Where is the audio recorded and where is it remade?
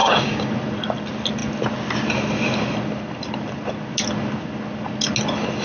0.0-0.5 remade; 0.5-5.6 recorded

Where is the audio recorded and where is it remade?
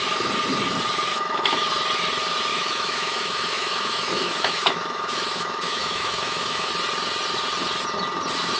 0.0-1.1 recorded; 1.1-1.7 remade; 1.7-2.5 recorded; 2.5-6.7 remade; 6.7-8.6 recorded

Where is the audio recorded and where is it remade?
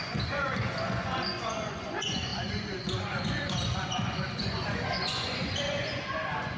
0.0-6.6 remade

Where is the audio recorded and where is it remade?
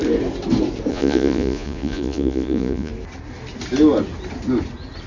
0.0-0.9 recorded; 0.9-2.9 remade; 2.9-5.1 recorded